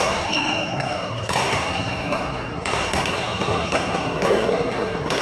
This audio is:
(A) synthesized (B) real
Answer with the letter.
A